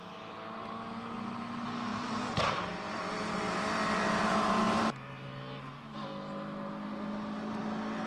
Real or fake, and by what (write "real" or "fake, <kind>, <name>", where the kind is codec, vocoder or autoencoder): real